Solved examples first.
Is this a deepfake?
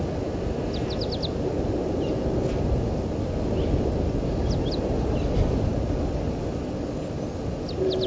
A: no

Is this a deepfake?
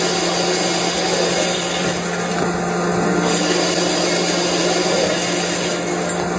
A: no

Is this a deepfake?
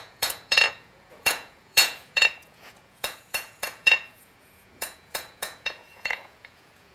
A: yes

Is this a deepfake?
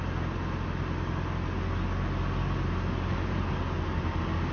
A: no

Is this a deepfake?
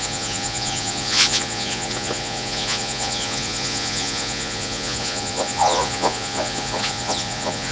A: yes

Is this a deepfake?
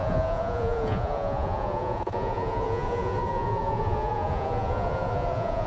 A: yes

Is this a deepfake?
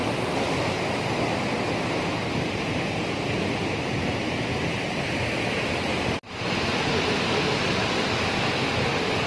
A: no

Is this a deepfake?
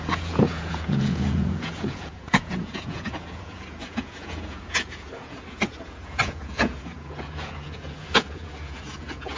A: yes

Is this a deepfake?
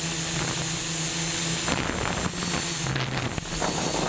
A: no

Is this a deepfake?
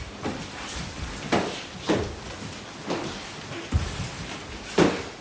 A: no